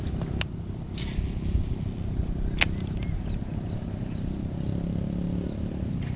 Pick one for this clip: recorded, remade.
recorded